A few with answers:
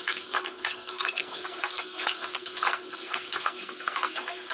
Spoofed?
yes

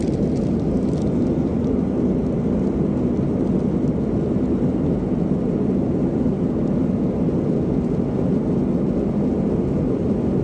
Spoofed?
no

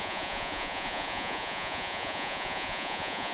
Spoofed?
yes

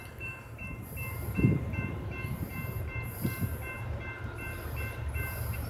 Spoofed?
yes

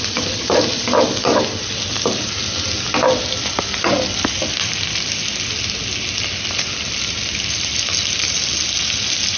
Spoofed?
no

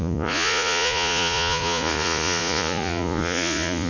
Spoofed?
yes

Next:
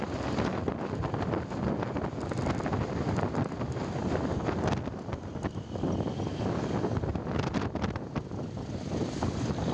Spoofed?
no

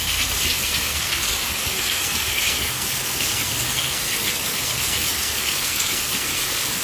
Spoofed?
yes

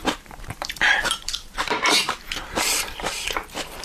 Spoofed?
yes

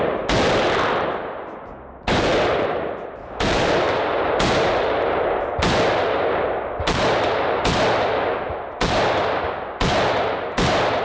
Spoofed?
no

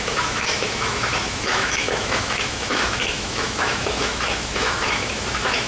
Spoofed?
yes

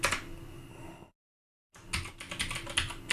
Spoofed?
no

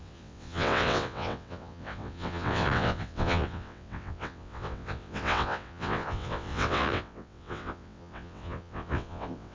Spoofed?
yes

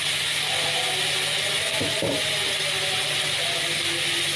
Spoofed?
no